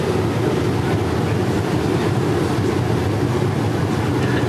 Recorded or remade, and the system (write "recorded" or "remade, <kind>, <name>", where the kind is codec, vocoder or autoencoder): recorded